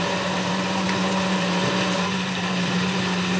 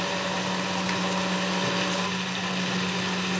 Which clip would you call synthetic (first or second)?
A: first